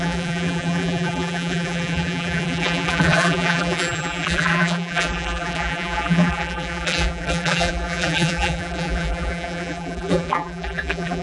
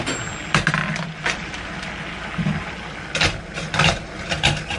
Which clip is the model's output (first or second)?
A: first